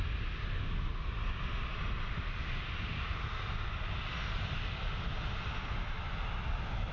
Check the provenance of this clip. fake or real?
real